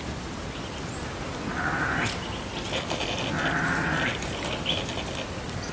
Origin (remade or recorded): recorded